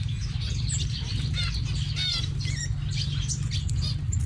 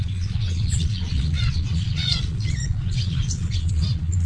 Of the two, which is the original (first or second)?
first